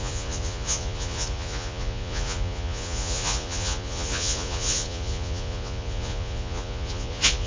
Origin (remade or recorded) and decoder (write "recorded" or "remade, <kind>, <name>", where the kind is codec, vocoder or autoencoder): remade, vocoder, Vocos